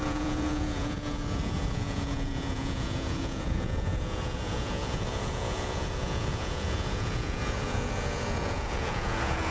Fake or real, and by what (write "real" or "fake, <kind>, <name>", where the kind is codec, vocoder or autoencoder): fake, vocoder, Vocos